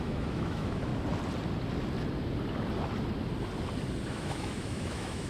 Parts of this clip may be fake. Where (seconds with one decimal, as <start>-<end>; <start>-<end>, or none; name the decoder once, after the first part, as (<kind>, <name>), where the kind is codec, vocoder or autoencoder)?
0.0-0.9 (autoencoder, DAC-VAE); 4.1-5.3